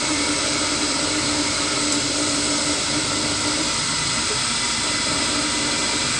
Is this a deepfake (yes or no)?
yes